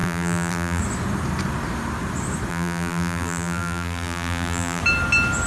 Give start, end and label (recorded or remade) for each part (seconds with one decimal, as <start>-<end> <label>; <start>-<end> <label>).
0.0-0.8 remade; 0.8-2.5 recorded; 2.5-4.8 remade; 4.8-5.5 recorded